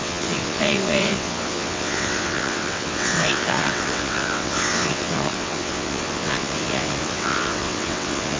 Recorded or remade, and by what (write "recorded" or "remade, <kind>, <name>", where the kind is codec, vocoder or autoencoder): remade, vocoder, WaveNeXt